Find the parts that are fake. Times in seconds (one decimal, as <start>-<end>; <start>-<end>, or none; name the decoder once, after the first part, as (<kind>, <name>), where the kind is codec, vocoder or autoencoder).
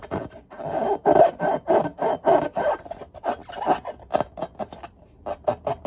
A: none